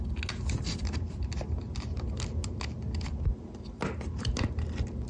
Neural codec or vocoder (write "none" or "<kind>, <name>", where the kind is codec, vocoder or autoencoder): none